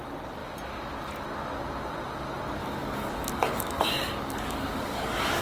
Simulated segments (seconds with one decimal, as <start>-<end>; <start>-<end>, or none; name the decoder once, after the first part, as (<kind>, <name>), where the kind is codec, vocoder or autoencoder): 2.6-5.4 (codec, DAC)